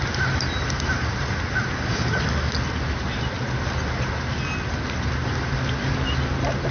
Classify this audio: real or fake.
real